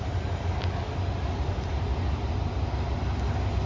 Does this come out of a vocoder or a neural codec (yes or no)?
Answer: no